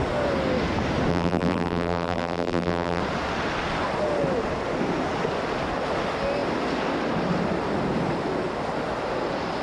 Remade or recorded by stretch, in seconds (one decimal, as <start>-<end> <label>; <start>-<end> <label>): 0.0-1.1 recorded; 1.1-3.0 remade; 3.0-9.6 recorded